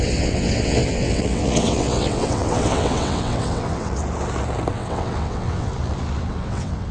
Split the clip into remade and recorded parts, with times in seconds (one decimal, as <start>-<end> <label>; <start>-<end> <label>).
0.0-4.0 remade; 4.0-4.7 recorded; 4.7-5.7 remade; 5.7-6.3 recorded; 6.3-6.9 remade